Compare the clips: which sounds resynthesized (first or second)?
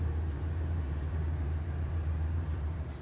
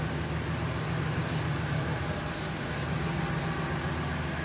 first